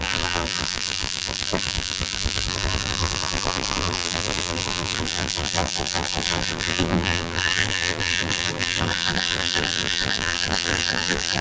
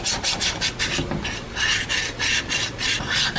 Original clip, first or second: second